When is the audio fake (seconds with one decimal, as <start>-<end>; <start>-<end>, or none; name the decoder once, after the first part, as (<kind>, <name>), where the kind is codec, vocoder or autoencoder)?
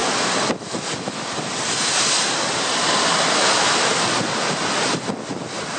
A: none